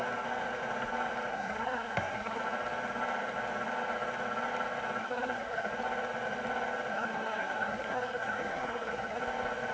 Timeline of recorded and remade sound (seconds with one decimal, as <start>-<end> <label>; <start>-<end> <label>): 0.0-1.3 recorded; 1.3-2.4 remade; 2.4-5.0 recorded; 5.0-5.7 remade; 5.7-6.9 recorded; 6.9-9.2 remade; 9.2-9.7 recorded